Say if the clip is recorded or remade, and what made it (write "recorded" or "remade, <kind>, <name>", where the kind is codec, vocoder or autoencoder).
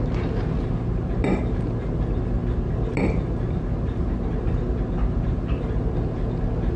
recorded